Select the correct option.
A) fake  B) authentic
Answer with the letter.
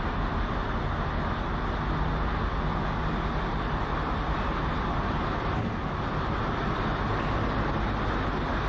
B